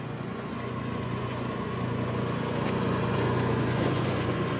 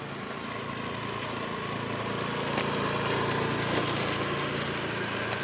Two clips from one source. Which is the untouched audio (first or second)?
second